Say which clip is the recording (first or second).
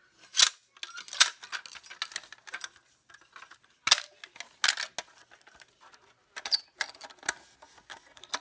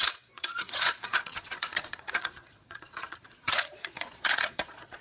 first